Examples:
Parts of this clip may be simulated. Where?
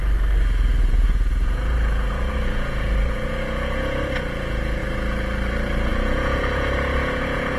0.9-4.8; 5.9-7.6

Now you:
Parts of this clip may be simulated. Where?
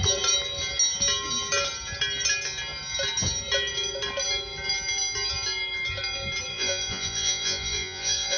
6.5-8.4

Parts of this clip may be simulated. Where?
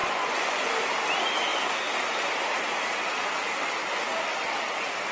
0.0-0.7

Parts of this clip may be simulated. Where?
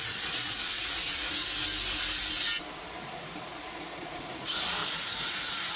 0.0-1.4; 2.9-5.8